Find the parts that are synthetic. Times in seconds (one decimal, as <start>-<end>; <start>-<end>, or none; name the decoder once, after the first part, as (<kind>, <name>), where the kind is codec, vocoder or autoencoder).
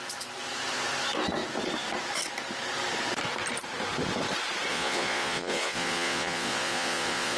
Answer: 4.7-7.4 (vocoder, Vocos)